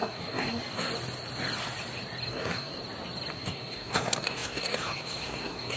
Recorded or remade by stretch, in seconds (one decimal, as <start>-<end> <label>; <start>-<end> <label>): 0.0-0.9 remade; 0.9-2.3 recorded; 2.3-2.8 remade; 2.8-3.3 recorded; 3.3-5.8 remade